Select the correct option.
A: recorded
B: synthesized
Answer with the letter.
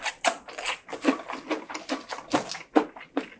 A